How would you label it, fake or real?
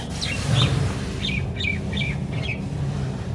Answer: fake